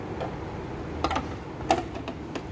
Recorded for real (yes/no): yes